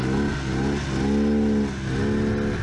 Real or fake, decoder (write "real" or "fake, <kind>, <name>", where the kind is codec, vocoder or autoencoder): real